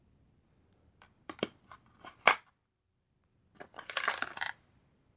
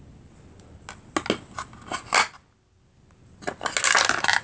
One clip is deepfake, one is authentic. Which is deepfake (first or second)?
first